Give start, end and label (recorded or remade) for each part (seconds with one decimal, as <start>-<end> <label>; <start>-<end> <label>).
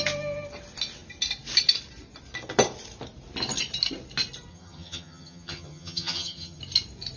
0.0-4.5 recorded; 4.5-6.6 remade; 6.6-7.2 recorded